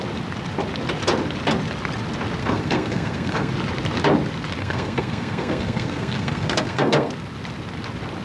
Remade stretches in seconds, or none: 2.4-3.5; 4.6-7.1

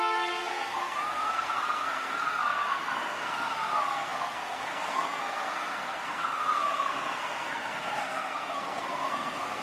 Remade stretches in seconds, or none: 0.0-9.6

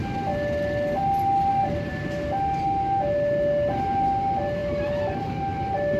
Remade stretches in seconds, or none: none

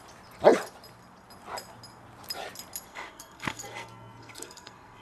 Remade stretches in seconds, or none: 2.9-5.0